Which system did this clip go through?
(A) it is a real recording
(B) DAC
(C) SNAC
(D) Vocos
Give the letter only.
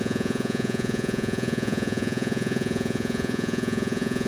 D